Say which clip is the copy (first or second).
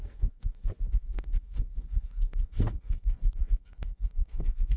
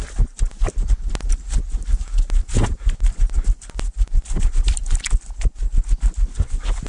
first